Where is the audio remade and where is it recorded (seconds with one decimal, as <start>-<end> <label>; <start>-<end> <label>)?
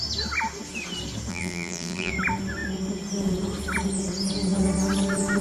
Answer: 0.0-1.3 recorded; 1.3-2.1 remade; 2.1-5.4 recorded